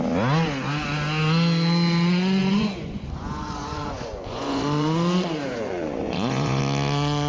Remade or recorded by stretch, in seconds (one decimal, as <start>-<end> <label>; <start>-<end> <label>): 0.0-2.4 recorded; 2.4-6.6 remade; 6.6-7.3 recorded